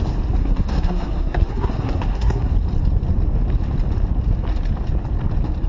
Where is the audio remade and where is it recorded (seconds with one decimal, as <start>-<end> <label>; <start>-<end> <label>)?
0.0-0.4 recorded; 0.4-2.5 remade; 2.5-5.7 recorded

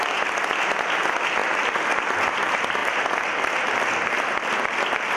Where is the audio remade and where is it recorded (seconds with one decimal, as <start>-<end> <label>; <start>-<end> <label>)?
0.0-5.2 recorded